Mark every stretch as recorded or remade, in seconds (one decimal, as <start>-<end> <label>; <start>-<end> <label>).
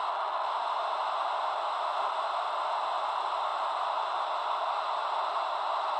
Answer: 0.0-3.5 recorded; 3.5-4.3 remade; 4.3-6.0 recorded